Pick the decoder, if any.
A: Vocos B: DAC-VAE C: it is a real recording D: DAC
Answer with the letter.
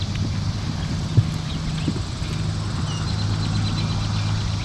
C